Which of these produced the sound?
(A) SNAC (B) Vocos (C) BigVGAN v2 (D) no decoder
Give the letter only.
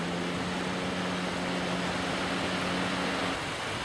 D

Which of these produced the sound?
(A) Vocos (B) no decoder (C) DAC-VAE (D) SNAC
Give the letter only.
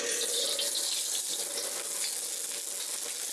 B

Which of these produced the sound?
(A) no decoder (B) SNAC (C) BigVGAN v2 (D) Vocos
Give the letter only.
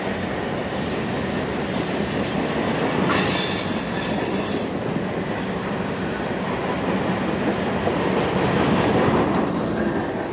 A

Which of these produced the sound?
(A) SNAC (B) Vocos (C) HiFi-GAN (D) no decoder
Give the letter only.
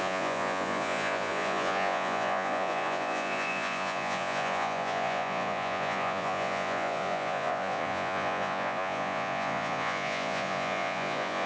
B